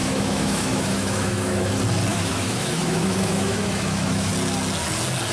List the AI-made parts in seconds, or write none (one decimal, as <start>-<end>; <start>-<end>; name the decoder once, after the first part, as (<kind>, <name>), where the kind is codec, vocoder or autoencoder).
0.0-1.7 (autoencoder, DAC-VAE); 2.1-4.3